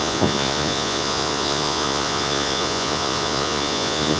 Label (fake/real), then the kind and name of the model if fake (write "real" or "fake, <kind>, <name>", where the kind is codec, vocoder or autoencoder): fake, vocoder, Vocos